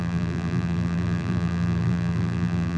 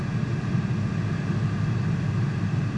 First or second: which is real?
second